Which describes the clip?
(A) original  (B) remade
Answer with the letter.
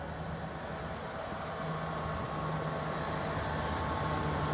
A